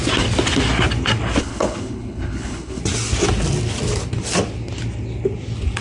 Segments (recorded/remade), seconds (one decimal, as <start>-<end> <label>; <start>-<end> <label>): 0.0-1.4 recorded; 1.4-2.8 remade; 2.8-5.8 recorded